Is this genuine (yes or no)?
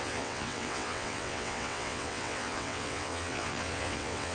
no